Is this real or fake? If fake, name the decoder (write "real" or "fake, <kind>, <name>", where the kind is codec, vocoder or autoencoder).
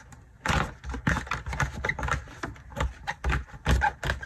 real